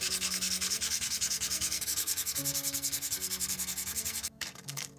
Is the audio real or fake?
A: fake